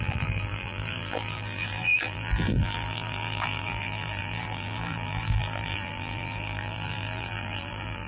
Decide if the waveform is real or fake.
fake